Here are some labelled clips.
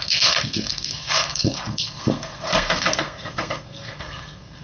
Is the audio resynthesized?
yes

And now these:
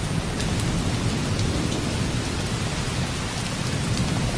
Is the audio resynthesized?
no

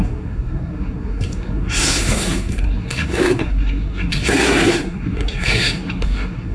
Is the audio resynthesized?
yes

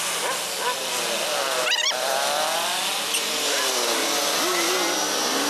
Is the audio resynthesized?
no